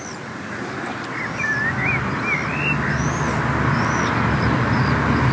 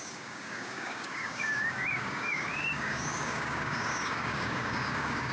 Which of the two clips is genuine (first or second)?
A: first